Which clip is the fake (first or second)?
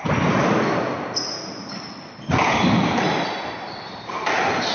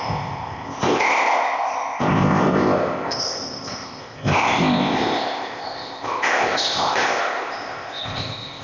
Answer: second